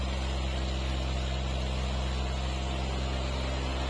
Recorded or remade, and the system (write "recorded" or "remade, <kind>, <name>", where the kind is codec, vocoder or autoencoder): recorded